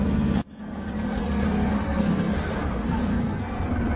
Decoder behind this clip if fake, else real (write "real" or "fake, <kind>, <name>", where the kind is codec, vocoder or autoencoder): fake, codec, SNAC